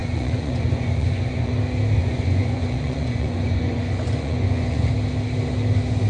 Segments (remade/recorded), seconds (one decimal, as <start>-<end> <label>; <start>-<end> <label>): 0.0-1.5 remade; 1.5-2.0 recorded; 2.0-4.9 remade; 4.9-6.1 recorded